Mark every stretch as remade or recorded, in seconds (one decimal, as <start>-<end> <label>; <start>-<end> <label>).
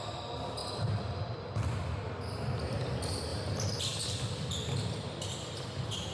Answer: 0.0-0.6 recorded; 0.6-1.2 remade; 1.2-3.3 recorded; 3.3-4.0 remade; 4.0-6.1 recorded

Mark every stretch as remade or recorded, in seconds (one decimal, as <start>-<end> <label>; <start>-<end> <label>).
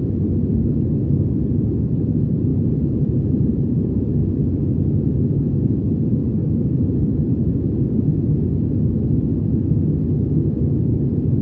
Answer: 0.0-2.5 recorded; 2.5-4.1 remade; 4.1-6.4 recorded; 6.4-7.5 remade; 7.5-11.4 recorded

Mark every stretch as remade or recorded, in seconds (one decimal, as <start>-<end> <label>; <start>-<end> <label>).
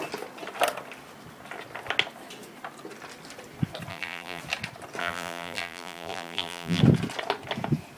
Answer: 0.0-3.9 recorded; 3.9-4.4 remade; 4.4-5.0 recorded; 5.0-6.8 remade; 6.8-8.0 recorded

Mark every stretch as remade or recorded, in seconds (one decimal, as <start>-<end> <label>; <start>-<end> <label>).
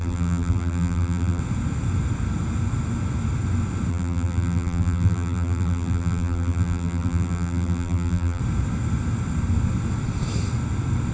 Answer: 0.0-1.4 remade; 1.4-3.9 recorded; 3.9-8.4 remade; 8.4-11.1 recorded